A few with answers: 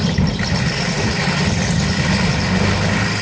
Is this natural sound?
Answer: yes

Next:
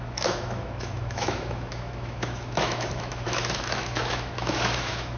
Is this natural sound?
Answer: no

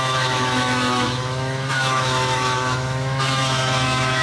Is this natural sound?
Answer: no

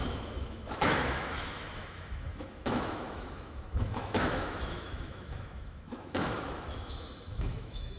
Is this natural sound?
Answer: no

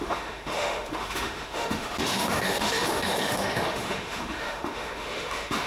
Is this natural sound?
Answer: no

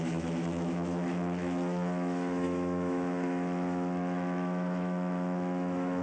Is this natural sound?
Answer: no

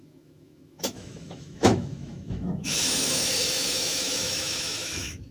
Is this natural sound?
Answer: no